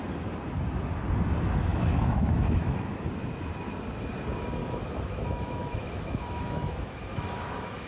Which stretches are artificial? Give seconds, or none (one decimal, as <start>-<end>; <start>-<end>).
1.7-3.1; 4.6-7.9